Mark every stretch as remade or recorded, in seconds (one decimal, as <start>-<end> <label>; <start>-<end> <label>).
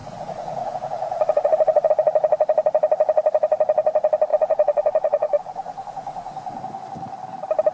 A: 0.0-1.9 remade; 1.9-4.3 recorded; 4.3-6.6 remade; 6.6-7.7 recorded